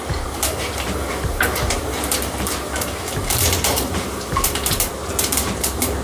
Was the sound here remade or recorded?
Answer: remade